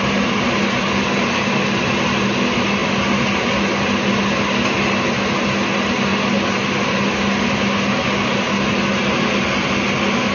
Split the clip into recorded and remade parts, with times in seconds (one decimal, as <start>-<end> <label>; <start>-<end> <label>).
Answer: 0.0-10.3 recorded